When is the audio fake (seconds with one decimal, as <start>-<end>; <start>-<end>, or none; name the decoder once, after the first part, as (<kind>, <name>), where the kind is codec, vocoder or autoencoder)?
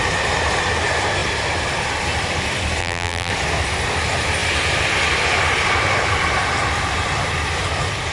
2.8-3.3 (vocoder, BigVGAN v2)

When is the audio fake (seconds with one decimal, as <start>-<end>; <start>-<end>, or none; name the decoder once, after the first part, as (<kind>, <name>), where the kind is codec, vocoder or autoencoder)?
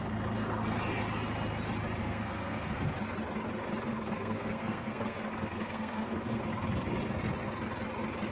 2.0-2.8 (codec, SNAC); 3.9-6.4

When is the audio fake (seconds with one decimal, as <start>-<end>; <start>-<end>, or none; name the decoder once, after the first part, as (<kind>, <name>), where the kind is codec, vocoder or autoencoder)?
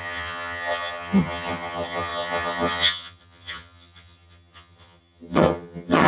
0.0-6.1 (vocoder, HiFi-GAN)